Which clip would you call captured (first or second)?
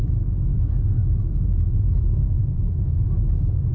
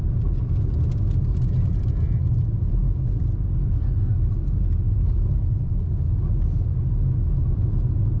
second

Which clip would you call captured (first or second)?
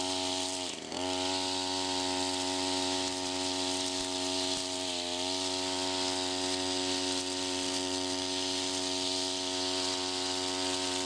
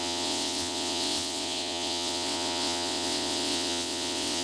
first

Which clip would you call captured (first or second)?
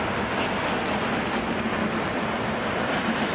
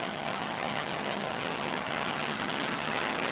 first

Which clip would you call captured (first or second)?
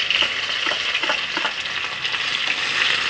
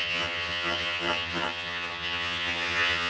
first